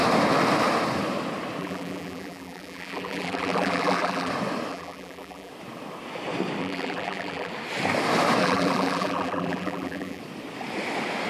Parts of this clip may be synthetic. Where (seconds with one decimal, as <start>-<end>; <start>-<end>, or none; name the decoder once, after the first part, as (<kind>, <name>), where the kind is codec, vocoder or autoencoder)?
1.6-4.3 (vocoder, BigVGAN v2); 4.7-5.5; 6.6-7.5; 8.4-10.2